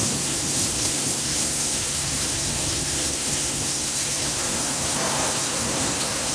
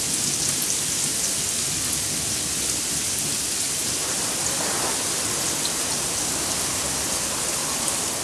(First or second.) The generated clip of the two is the first